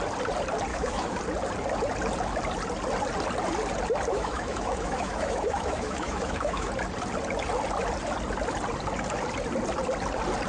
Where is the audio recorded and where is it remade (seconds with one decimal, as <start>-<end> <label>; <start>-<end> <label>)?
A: 0.0-0.7 recorded; 0.7-1.2 remade; 1.2-4.1 recorded; 4.1-6.7 remade; 6.7-10.5 recorded